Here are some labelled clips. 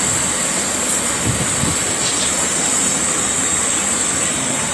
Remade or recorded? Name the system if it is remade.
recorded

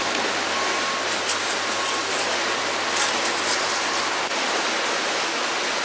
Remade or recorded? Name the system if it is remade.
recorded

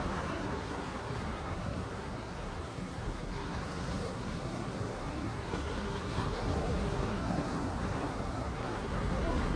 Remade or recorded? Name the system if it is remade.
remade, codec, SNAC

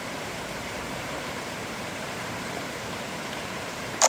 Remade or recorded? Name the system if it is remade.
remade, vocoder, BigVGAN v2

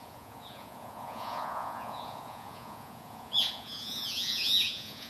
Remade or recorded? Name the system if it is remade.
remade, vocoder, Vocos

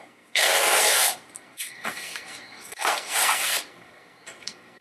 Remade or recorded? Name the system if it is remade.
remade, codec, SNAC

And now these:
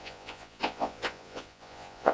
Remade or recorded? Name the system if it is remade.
remade, vocoder, Vocos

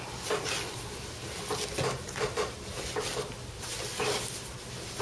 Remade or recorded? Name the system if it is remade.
recorded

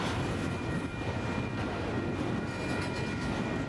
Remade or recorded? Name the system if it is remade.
recorded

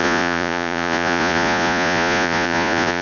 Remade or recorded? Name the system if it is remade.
remade, vocoder, Vocos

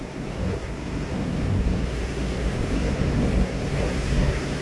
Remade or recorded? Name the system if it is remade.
remade, codec, SNAC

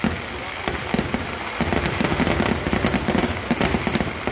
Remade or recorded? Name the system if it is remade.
recorded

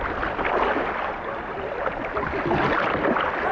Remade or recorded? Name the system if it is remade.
recorded